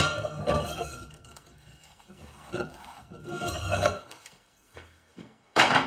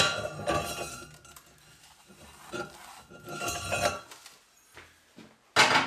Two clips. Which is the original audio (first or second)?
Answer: second